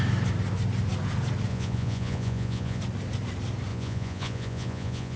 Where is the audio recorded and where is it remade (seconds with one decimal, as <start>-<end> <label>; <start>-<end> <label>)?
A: 0.0-1.5 recorded; 1.5-2.8 remade; 2.8-3.7 recorded; 3.7-5.2 remade